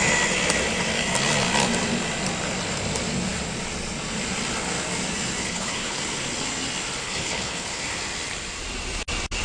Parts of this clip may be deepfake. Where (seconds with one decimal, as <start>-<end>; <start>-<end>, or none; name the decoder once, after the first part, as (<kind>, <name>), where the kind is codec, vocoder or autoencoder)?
5.4-6.0 (codec, HILCodec); 7.0-7.8